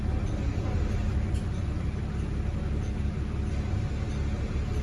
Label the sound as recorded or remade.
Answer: recorded